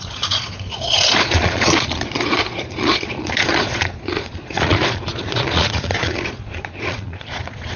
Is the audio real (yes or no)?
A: no